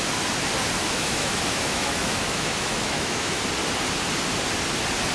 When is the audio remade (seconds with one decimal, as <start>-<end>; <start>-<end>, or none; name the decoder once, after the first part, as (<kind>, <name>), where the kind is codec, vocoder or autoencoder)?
0.8-3.4 (autoencoder, DAC-VAE)